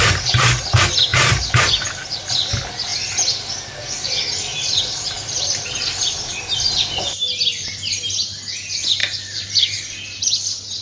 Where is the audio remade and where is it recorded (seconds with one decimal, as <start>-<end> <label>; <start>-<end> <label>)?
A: 0.0-1.1 recorded; 1.1-2.3 remade; 2.3-4.5 recorded; 4.5-6.4 remade; 6.4-9.0 recorded; 9.0-9.8 remade; 9.8-10.8 recorded